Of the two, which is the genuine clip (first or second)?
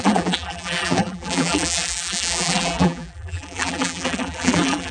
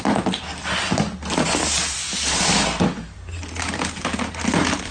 second